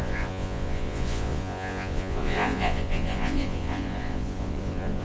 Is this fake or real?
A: fake